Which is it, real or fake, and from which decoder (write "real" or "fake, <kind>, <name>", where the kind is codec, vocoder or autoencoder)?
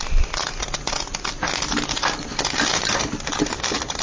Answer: real